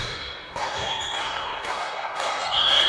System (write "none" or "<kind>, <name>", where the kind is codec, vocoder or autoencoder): codec, SNAC